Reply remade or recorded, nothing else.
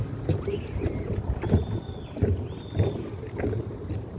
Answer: recorded